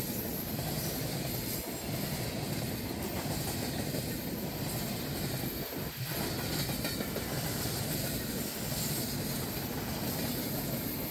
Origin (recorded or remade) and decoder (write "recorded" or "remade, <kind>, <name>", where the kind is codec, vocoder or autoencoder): recorded